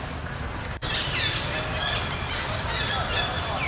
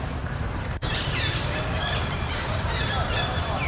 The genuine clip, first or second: first